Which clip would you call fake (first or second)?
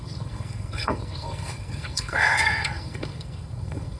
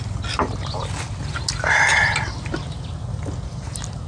first